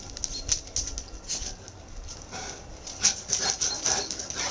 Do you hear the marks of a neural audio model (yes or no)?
no